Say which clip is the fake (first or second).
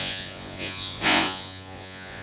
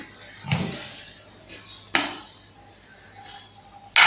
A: first